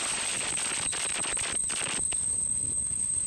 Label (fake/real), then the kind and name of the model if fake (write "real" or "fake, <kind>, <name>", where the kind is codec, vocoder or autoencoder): fake, vocoder, BigVGAN v2